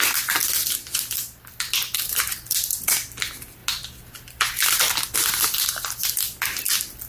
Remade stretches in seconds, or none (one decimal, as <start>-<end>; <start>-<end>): none

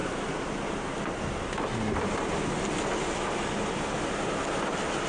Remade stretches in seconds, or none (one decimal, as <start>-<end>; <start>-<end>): none